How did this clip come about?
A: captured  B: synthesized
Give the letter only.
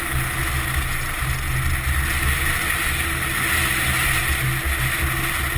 A